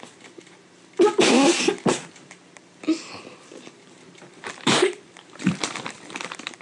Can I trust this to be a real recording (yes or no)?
no